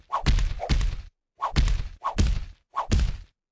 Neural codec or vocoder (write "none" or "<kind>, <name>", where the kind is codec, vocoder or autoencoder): none